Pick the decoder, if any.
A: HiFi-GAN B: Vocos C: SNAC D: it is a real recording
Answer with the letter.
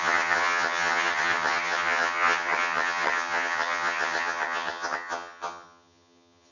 A